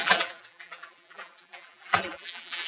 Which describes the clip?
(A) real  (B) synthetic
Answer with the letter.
B